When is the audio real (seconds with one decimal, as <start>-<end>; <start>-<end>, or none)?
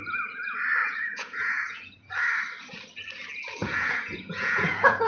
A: 0.0-0.8; 2.1-3.6